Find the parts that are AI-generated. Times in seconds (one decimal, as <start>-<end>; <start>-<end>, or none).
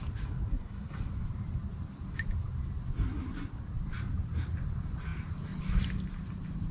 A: 0.5-1.0